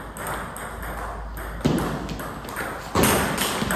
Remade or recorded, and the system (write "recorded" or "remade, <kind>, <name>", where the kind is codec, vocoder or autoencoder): recorded